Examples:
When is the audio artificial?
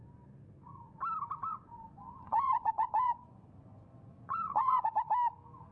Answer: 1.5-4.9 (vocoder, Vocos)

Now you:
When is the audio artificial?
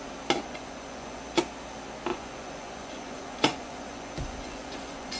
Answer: 0.4-1.2 (vocoder, Vocos); 2.1-5.2